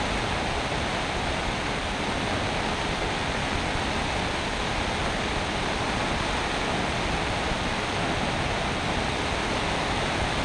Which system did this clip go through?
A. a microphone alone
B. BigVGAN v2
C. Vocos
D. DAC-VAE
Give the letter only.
A